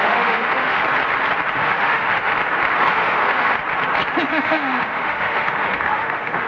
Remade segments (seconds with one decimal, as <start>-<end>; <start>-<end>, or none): 0.0-0.8; 1.5-2.3; 2.9-3.6; 4.3-6.5